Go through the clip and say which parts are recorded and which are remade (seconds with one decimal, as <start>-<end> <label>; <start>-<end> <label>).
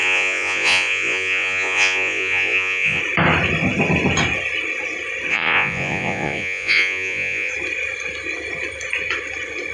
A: 0.0-3.0 remade; 3.0-5.3 recorded; 5.3-7.5 remade; 7.5-9.7 recorded